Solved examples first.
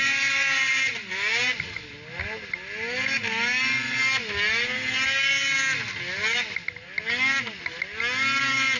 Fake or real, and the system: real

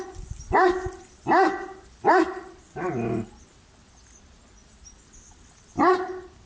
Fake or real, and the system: real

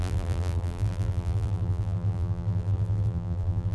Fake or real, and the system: fake, vocoder, BigVGAN v2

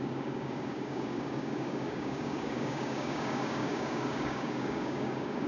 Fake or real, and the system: fake, codec, DAC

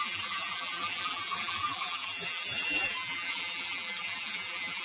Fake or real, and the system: fake, vocoder, BigVGAN v2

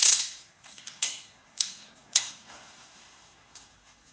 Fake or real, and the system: fake, codec, SNAC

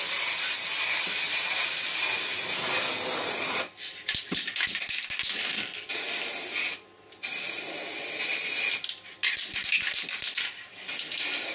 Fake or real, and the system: real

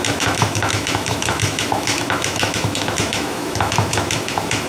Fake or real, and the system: fake, autoencoder, DAC-VAE